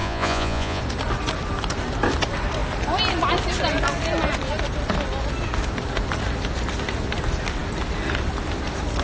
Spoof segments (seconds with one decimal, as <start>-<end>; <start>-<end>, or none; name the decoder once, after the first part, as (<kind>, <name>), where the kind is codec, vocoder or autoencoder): 0.0-0.8 (vocoder, Vocos)